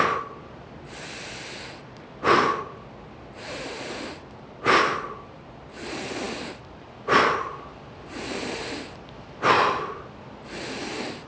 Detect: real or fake real